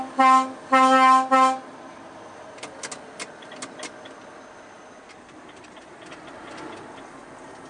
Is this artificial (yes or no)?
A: no